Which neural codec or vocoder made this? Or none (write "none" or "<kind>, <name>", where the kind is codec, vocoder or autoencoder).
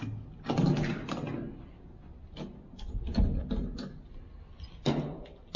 none